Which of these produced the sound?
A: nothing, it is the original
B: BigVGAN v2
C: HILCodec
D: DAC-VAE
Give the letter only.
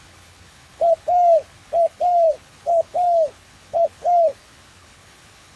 C